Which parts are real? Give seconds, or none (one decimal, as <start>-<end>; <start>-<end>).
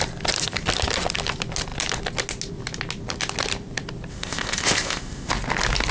0.0-4.1; 5.3-5.9